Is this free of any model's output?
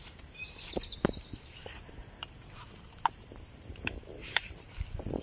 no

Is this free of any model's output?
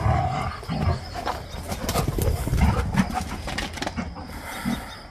yes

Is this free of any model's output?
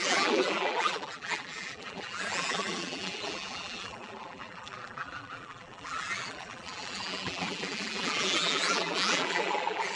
no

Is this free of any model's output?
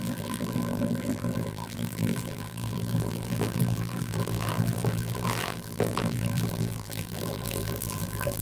no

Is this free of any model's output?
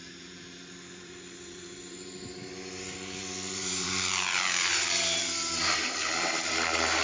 no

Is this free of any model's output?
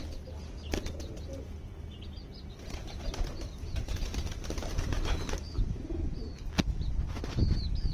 yes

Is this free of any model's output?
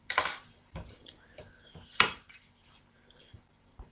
no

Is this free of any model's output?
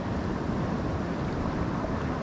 yes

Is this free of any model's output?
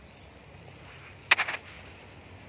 yes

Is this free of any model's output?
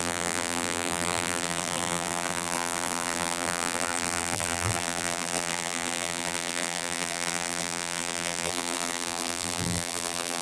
no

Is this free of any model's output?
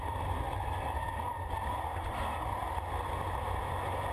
yes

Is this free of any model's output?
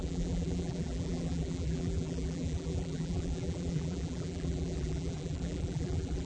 no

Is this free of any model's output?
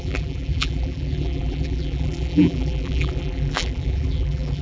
no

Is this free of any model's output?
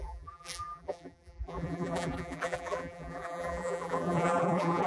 no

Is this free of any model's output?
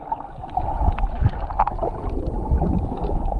yes